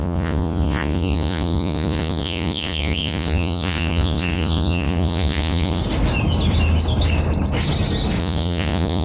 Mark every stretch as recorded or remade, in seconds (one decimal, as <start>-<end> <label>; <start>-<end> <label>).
0.0-5.8 remade; 5.8-8.2 recorded; 8.2-9.0 remade